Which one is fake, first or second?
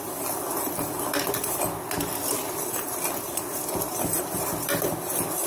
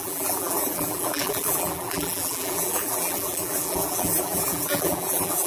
second